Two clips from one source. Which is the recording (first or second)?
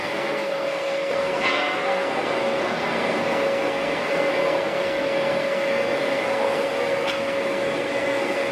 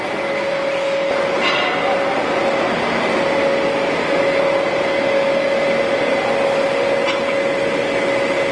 second